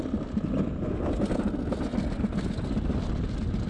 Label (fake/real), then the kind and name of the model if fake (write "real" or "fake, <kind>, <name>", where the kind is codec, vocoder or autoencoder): real